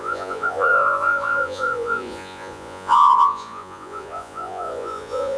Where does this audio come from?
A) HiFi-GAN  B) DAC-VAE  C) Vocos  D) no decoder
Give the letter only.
C